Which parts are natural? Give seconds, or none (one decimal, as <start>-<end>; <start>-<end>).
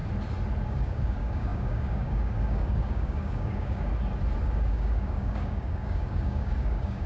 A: 0.0-0.7; 3.9-4.4